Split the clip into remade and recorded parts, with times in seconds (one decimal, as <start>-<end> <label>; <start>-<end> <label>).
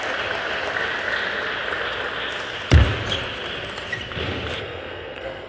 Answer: 0.0-4.6 recorded; 4.6-5.5 remade